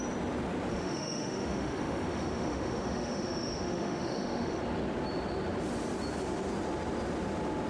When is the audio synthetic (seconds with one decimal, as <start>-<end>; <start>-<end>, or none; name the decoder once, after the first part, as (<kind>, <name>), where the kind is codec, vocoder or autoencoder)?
0.7-4.6 (autoencoder, DAC-VAE)